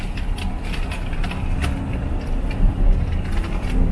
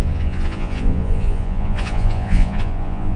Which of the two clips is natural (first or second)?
first